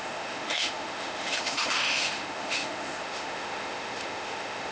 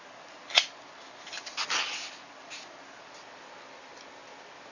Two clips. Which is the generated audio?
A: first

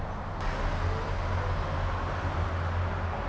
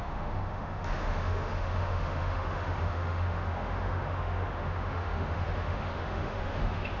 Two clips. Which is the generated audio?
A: second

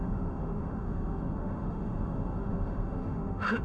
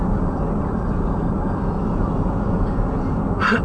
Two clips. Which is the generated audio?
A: first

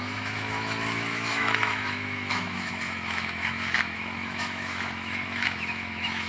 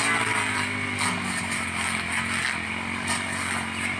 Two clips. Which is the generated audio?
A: first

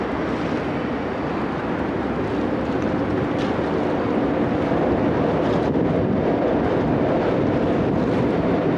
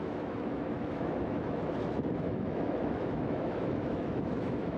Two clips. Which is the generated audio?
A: second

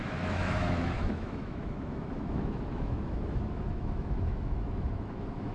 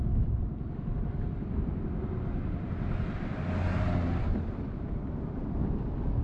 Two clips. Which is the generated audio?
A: first